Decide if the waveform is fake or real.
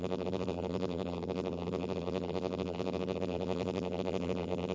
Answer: fake